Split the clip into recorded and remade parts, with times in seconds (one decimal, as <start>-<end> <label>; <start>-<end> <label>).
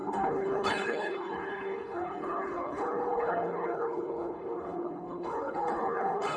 0.0-6.4 remade